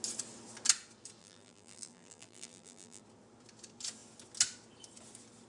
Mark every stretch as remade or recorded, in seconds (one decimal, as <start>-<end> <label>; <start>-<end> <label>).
0.0-1.2 recorded; 1.2-3.0 remade; 3.0-5.5 recorded